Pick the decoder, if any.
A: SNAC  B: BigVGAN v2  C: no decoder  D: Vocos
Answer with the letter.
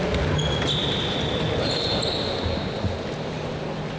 C